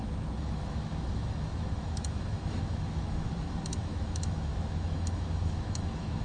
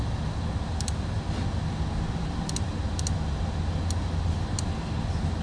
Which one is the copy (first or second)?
first